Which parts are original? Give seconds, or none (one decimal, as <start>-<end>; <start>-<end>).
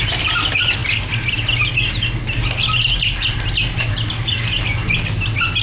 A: 0.0-5.6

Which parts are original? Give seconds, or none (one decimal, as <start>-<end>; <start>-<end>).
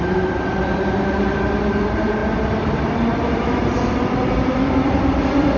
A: 0.0-5.6